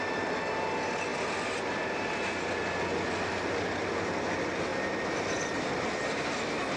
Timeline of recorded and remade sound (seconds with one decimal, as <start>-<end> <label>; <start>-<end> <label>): 0.0-6.8 recorded